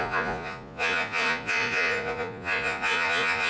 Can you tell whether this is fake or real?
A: fake